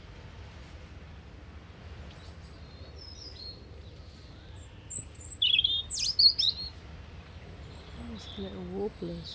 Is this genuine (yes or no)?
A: yes